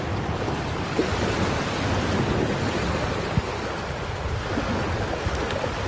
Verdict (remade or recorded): recorded